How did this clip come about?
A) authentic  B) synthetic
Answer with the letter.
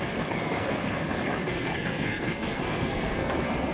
B